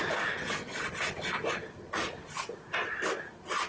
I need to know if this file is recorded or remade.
recorded